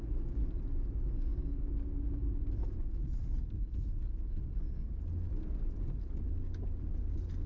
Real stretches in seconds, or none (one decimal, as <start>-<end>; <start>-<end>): 0.0-7.5